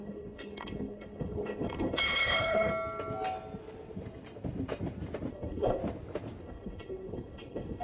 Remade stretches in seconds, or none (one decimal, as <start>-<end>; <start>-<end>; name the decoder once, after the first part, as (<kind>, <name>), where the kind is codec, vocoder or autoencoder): 0.0-2.7 (codec, HILCodec); 5.3-5.8; 6.4-7.8